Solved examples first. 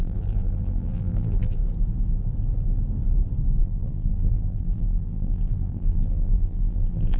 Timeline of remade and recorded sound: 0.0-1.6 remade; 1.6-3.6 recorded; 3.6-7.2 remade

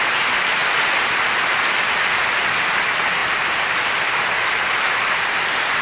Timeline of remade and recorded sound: 0.0-5.8 recorded

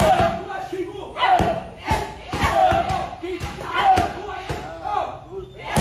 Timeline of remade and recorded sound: 0.0-0.9 recorded; 0.9-1.9 remade; 1.9-2.6 recorded; 2.6-4.3 remade; 4.3-4.9 recorded; 4.9-5.8 remade

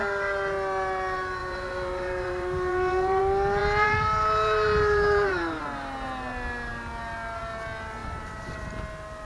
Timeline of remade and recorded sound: 0.0-1.4 recorded; 1.4-3.2 remade; 3.2-3.6 recorded; 3.6-5.6 remade; 5.6-8.0 recorded; 8.0-8.7 remade; 8.7-9.2 recorded

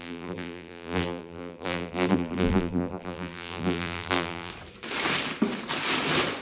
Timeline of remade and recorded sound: 0.0-4.5 remade; 4.5-6.4 recorded

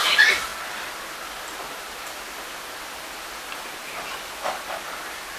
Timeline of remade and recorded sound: 0.0-5.4 recorded

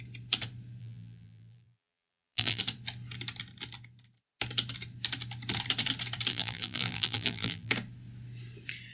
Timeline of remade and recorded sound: 0.0-0.8 recorded; 0.8-2.6 remade; 2.6-6.3 recorded; 6.3-7.7 remade; 7.7-8.9 recorded